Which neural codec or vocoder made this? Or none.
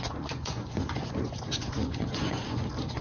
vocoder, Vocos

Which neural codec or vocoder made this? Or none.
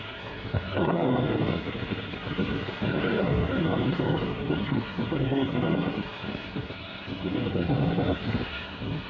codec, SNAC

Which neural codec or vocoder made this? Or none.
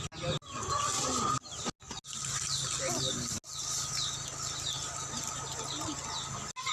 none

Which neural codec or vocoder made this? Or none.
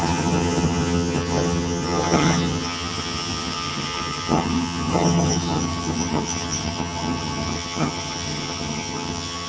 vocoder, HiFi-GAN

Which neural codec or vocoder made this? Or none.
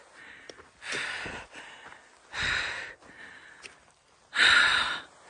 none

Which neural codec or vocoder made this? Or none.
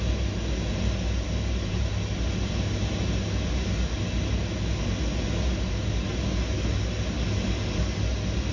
none